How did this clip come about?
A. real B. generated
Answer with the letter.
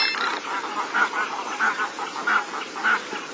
A